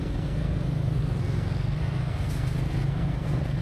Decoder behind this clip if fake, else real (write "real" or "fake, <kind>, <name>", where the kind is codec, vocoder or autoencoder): fake, codec, SNAC